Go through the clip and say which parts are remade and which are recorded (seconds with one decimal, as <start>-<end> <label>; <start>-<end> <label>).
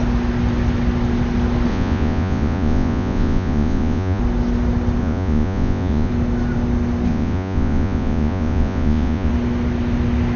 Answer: 0.0-1.7 recorded; 1.7-4.2 remade; 4.2-5.0 recorded; 5.0-6.1 remade; 6.1-7.1 recorded; 7.1-9.3 remade; 9.3-10.4 recorded